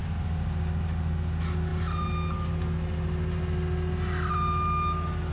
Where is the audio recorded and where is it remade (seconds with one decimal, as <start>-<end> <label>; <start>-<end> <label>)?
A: 0.0-5.3 recorded